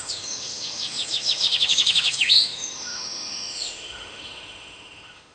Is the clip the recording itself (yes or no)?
no